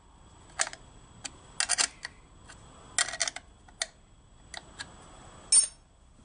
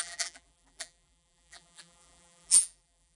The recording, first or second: first